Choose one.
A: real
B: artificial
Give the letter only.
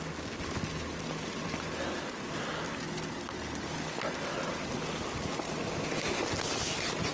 A